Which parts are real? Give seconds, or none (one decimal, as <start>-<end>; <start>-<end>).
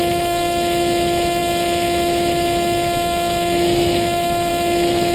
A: none